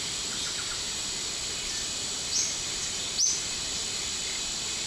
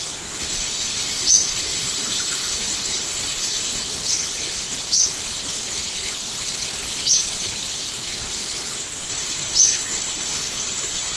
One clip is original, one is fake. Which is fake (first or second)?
second